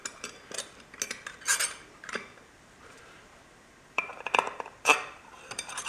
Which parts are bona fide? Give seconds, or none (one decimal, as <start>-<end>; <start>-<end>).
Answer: 0.0-1.9